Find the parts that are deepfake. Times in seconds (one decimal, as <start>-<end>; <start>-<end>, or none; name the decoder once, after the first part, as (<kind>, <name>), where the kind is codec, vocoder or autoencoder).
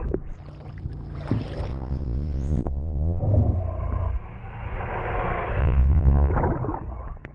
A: 1.7-3.2 (vocoder, Vocos); 5.6-6.3